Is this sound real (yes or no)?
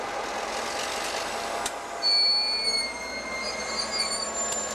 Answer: yes